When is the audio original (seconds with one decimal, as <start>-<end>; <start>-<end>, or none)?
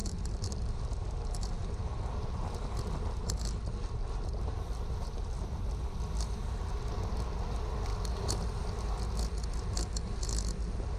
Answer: 0.7-11.0